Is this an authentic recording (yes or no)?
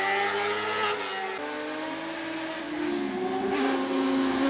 yes